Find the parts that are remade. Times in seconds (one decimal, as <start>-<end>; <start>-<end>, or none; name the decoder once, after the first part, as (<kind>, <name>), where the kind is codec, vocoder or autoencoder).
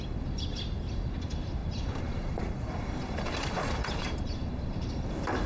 1.6-4.9 (vocoder, BigVGAN v2)